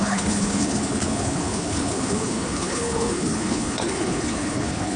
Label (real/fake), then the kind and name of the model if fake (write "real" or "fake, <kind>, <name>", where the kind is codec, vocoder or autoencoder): fake, codec, HILCodec